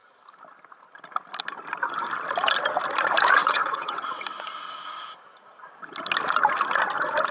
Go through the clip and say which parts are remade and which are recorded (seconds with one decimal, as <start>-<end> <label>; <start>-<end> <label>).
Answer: 0.0-3.4 recorded; 3.4-4.2 remade; 4.2-7.3 recorded